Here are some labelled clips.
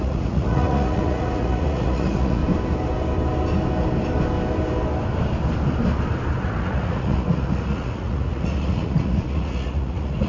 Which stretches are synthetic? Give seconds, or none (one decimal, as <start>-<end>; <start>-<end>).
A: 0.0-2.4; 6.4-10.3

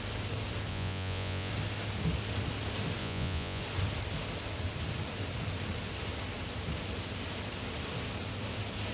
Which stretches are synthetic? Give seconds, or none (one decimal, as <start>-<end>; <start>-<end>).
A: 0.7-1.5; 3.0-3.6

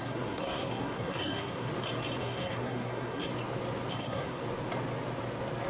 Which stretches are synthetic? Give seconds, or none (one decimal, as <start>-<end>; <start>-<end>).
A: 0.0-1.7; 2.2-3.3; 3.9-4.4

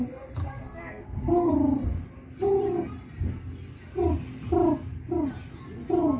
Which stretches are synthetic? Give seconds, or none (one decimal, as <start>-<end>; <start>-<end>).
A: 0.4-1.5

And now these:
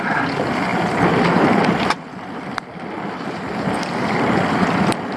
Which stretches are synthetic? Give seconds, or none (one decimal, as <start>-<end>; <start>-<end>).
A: 0.7-2.0